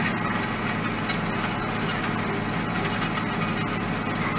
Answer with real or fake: real